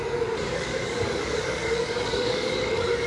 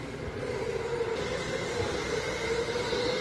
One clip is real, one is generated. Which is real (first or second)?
second